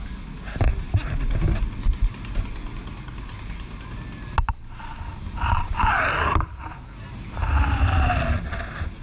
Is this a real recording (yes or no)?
yes